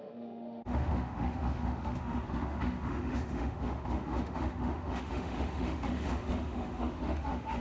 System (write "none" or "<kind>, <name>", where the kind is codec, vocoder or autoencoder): autoencoder, DAC-VAE